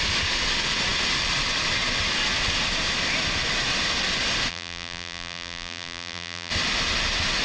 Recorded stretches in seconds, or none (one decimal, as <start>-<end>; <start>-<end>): 0.0-4.5; 6.5-7.4